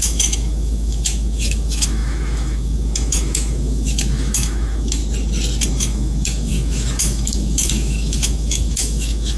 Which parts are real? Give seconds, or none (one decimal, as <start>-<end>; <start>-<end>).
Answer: 5.0-5.7